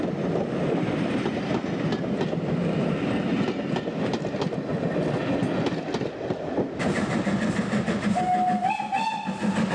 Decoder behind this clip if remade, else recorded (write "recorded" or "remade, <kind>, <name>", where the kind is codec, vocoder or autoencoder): recorded